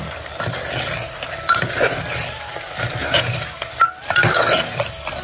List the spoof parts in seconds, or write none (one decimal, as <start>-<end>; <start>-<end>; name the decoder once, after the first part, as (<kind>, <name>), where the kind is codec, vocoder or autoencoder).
none